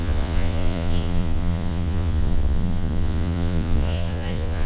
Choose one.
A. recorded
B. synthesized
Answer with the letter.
B